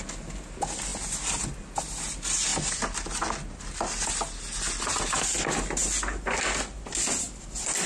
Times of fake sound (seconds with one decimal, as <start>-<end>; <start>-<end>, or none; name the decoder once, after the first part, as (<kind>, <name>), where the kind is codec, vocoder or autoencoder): none